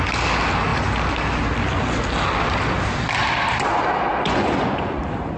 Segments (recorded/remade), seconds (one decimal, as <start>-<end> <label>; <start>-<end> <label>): 0.0-4.1 recorded; 4.1-5.0 remade; 5.0-5.4 recorded